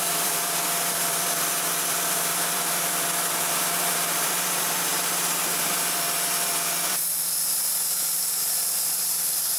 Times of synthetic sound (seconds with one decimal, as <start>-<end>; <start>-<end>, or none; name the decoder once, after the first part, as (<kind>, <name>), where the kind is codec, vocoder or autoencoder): 0.0-4.9 (vocoder, BigVGAN v2); 5.4-9.6